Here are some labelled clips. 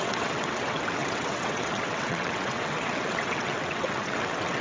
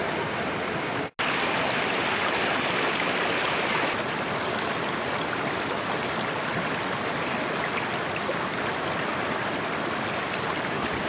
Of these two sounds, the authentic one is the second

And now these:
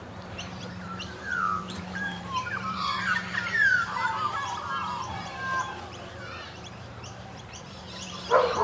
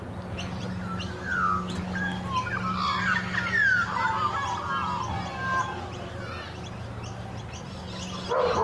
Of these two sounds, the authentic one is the second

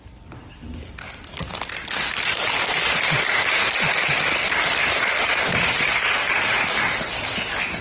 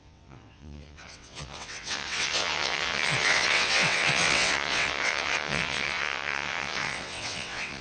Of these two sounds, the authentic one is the first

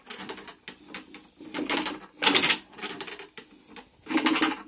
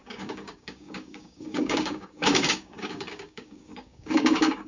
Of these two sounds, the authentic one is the first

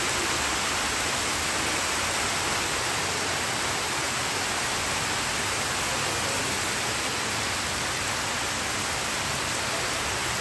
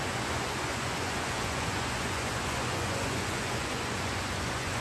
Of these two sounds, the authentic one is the first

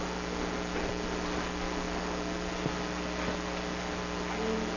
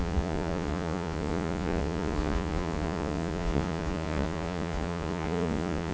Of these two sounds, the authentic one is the first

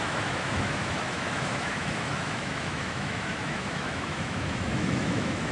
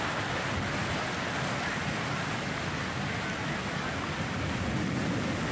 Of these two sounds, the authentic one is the second